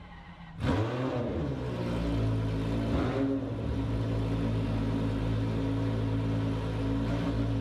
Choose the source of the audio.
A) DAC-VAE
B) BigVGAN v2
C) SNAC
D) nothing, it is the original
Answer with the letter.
D